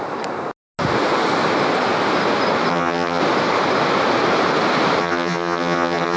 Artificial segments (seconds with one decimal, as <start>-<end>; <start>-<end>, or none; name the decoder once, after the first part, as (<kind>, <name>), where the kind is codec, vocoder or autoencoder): 2.7-3.2 (vocoder, HiFi-GAN); 5.0-6.2